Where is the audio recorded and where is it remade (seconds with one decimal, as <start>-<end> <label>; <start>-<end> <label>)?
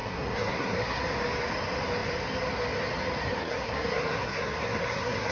0.0-1.0 remade; 1.0-3.2 recorded; 3.2-5.3 remade